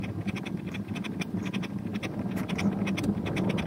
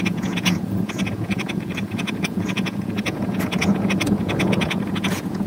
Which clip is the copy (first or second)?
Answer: second